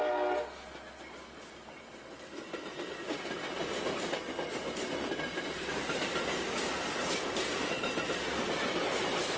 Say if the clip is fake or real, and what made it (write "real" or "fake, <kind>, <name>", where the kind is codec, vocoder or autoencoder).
real